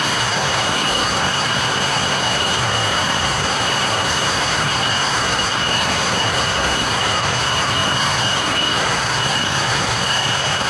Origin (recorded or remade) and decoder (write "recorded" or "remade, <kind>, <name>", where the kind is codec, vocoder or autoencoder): remade, codec, SNAC